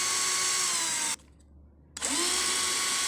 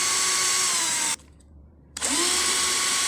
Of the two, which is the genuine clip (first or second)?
first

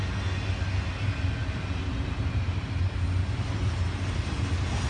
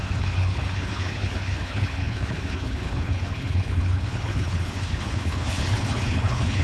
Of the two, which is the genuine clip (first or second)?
first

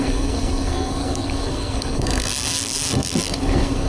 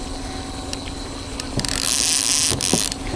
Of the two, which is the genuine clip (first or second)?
second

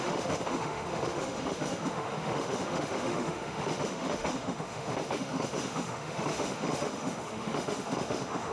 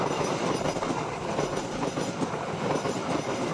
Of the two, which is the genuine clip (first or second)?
second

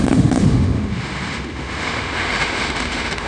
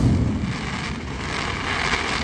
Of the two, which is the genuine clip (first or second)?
second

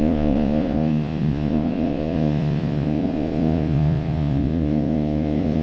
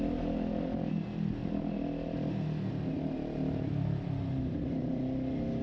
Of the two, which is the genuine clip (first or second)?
second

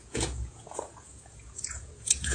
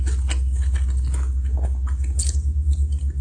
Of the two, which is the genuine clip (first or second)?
second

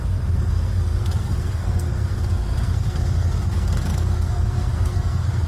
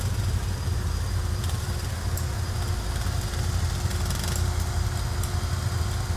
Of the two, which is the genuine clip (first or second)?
second